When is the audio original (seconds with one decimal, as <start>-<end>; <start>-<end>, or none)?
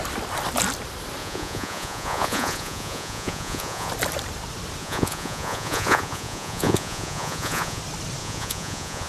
0.0-1.2; 3.9-4.8; 7.8-8.2